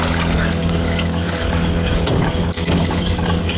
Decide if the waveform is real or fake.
fake